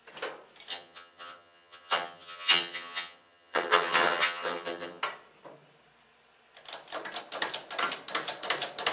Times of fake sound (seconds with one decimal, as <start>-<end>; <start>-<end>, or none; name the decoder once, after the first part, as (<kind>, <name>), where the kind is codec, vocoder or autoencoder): 0.7-5.0 (vocoder, HiFi-GAN)